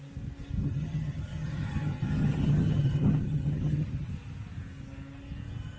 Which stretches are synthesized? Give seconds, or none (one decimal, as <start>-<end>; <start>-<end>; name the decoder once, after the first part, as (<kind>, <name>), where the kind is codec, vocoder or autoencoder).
0.6-4.1 (vocoder, HiFi-GAN)